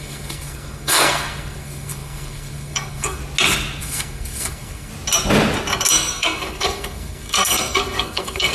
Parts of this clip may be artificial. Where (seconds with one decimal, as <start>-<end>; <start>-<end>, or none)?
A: 0.0-3.2; 3.8-4.9; 5.9-8.5